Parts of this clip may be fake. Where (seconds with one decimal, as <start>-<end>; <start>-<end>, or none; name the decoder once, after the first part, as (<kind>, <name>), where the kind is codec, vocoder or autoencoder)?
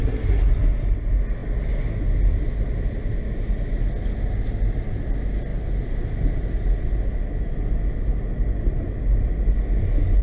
0.0-0.5 (codec, SNAC)